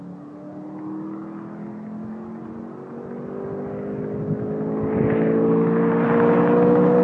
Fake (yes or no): no